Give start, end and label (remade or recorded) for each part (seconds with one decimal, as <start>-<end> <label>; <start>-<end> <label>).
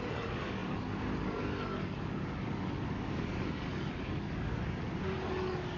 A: 0.0-5.8 remade